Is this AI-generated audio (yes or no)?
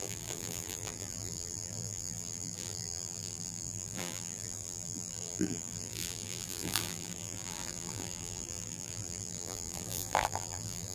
yes